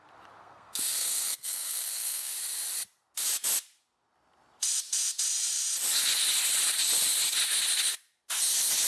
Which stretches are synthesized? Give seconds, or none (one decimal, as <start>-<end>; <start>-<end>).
0.4-2.3